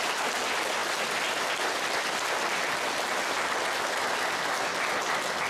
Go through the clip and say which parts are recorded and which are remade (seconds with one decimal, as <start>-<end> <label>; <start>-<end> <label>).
0.0-5.5 recorded

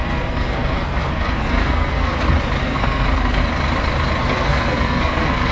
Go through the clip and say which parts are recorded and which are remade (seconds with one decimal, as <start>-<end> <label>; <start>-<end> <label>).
0.0-2.1 remade; 2.1-2.6 recorded; 2.6-3.4 remade; 3.4-4.2 recorded; 4.2-5.5 remade

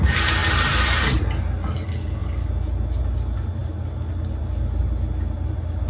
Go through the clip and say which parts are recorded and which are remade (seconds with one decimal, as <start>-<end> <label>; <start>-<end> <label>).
0.0-0.4 recorded; 0.4-1.2 remade; 1.2-5.9 recorded

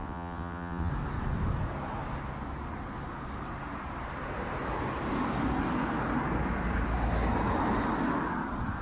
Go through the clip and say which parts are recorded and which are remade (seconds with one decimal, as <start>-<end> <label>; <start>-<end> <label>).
0.0-0.9 remade; 0.9-8.8 recorded

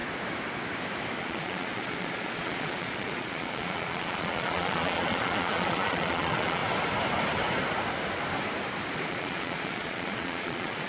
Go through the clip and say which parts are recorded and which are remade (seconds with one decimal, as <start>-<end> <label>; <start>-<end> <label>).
0.0-1.2 recorded; 1.2-6.6 remade; 6.6-9.1 recorded; 9.1-10.9 remade

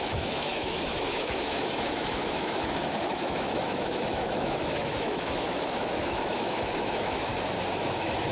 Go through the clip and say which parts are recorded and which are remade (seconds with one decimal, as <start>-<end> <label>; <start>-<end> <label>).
0.0-7.3 remade; 7.3-7.8 recorded; 7.8-8.3 remade